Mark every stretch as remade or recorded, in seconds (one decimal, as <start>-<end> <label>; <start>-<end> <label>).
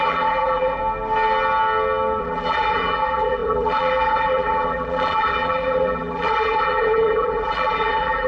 0.0-0.8 remade; 0.8-2.2 recorded; 2.2-8.3 remade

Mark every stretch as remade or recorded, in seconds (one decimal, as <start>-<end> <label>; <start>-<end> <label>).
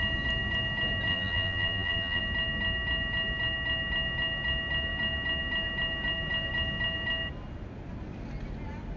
0.0-1.1 recorded; 1.1-2.2 remade; 2.2-9.0 recorded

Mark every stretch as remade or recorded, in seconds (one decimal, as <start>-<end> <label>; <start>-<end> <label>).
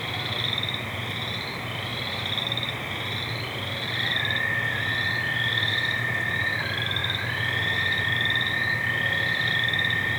0.0-10.2 recorded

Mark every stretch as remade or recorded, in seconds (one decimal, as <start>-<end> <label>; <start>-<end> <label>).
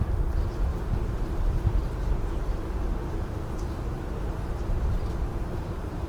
0.0-0.7 recorded; 0.7-4.1 remade; 4.1-5.3 recorded; 5.3-6.1 remade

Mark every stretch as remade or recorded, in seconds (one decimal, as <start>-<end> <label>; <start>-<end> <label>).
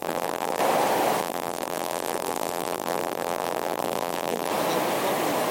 0.0-0.6 remade; 0.6-1.2 recorded; 1.2-4.5 remade; 4.5-5.5 recorded